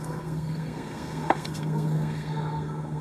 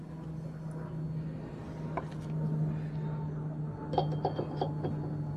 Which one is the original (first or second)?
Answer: second